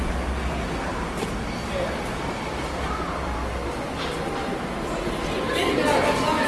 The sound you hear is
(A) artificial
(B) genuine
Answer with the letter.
B